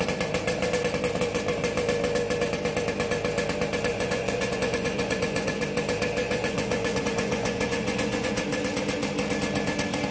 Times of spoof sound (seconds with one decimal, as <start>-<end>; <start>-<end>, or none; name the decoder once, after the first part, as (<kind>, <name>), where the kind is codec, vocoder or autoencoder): 3.9-5.6 (vocoder, Vocos); 6.2-8.4